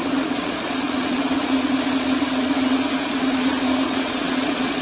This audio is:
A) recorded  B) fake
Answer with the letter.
B